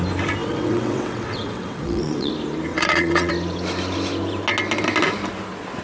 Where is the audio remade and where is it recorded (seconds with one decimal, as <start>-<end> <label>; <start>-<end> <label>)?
0.0-0.4 recorded; 0.4-2.3 remade; 2.3-2.7 recorded; 2.7-3.3 remade; 3.3-5.8 recorded